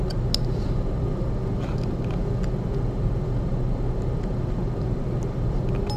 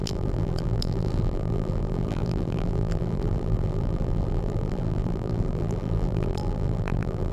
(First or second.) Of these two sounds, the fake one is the second